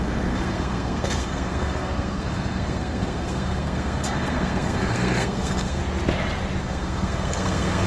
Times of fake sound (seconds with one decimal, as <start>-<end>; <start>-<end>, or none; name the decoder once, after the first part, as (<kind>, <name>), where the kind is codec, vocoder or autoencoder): 0.0-5.8 (codec, SNAC); 6.6-7.9